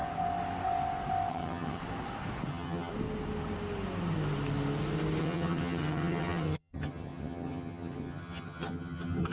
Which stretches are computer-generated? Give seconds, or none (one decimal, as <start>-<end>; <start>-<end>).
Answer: 1.3-1.8; 2.5-2.9; 5.2-9.3